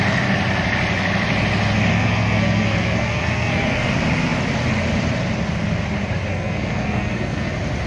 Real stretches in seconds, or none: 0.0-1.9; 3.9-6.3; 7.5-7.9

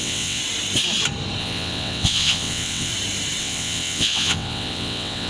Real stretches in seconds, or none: 0.4-1.4; 2.9-3.4

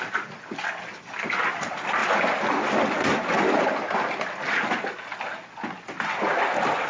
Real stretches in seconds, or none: 0.0-6.9

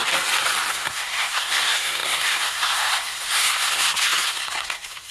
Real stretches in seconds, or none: 0.0-0.7

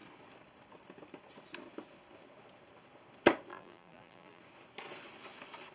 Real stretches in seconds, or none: 0.0-3.5; 4.4-5.7

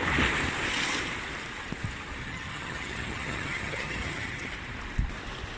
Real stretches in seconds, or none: 0.0-2.2; 4.5-5.6